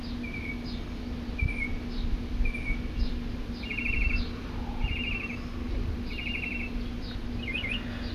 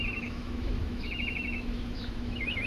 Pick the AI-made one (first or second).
second